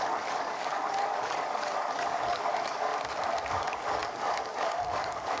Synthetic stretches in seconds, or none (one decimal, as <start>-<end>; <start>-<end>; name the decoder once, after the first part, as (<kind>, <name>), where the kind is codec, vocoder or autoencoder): 0.0-2.9 (codec, DAC); 3.5-5.4